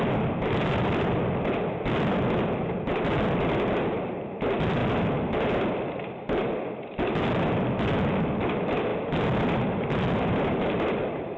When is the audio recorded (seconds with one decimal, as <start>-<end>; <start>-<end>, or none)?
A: 4.8-6.0; 8.9-9.5